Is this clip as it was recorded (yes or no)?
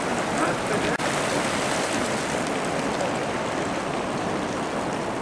yes